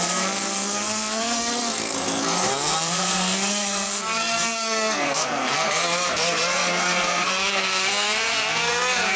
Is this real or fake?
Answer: fake